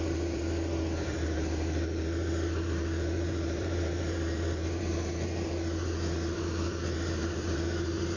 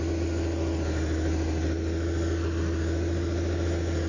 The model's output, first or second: first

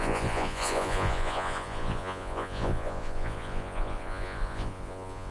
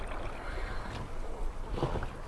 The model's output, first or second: first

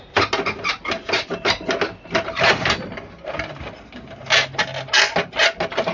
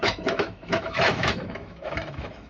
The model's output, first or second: second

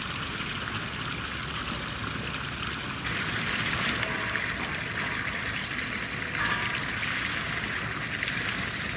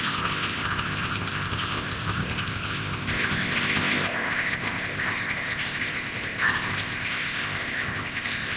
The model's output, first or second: second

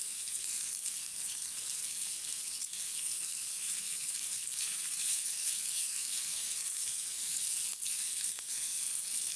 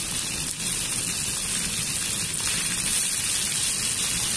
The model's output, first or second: first